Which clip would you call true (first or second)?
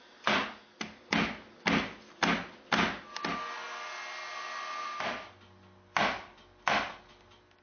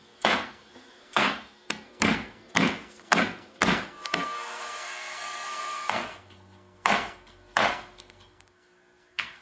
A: first